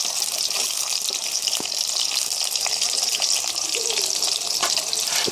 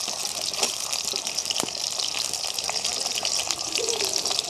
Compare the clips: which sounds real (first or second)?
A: first